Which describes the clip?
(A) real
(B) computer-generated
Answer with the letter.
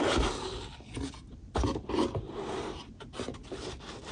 A